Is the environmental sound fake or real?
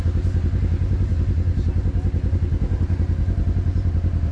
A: real